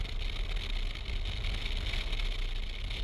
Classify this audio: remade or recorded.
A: recorded